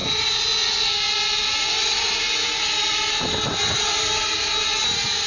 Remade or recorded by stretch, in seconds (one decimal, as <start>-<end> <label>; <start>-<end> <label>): 0.0-5.3 recorded

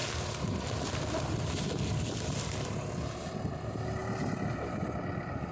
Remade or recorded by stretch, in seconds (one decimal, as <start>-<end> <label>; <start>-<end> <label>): 0.0-5.5 recorded

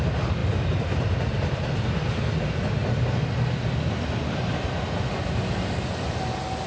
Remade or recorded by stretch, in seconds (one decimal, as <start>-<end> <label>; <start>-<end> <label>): 0.0-0.4 recorded; 0.4-2.4 remade; 2.4-6.7 recorded

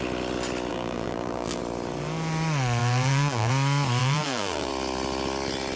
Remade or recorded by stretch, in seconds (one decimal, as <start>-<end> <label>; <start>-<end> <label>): 0.0-0.7 recorded; 0.7-1.6 remade; 1.6-2.8 recorded; 2.8-3.5 remade; 3.5-4.0 recorded; 4.0-4.7 remade; 4.7-5.8 recorded